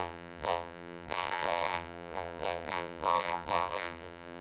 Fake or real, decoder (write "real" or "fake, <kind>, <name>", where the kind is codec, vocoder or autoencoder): fake, vocoder, BigVGAN v2